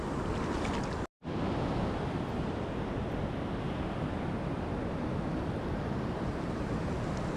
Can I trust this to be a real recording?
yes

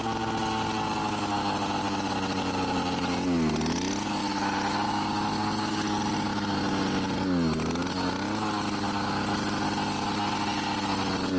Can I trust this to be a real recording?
yes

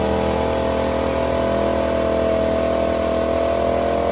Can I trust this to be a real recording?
yes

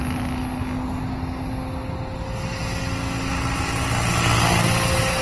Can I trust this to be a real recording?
yes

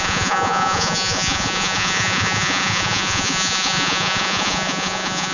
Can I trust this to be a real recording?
no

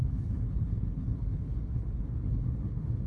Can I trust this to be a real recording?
no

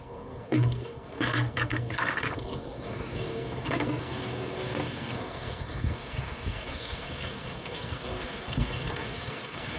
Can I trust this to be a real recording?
no